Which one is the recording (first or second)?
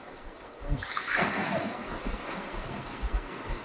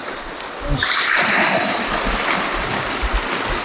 second